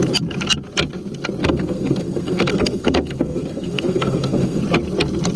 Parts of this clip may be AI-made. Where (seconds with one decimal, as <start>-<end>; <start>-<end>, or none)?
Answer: 1.4-4.6

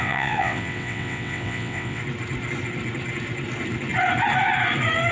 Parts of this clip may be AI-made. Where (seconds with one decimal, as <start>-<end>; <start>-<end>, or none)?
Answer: 0.0-2.0